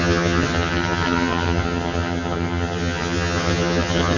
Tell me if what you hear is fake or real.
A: fake